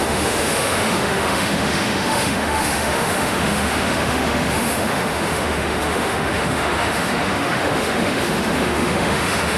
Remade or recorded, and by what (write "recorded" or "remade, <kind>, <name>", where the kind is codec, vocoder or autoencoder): remade, autoencoder, DAC-VAE